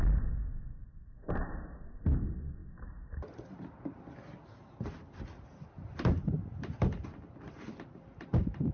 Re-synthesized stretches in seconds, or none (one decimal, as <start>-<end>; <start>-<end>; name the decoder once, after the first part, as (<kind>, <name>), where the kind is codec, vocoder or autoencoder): none